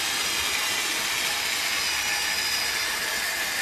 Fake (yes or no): no